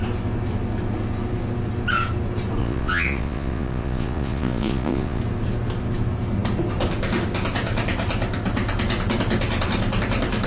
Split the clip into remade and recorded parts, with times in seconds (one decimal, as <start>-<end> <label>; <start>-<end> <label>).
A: 0.0-2.6 recorded; 2.6-5.2 remade; 5.2-10.5 recorded